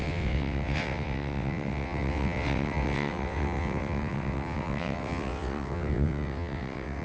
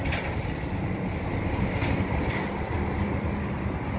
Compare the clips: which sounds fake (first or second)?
first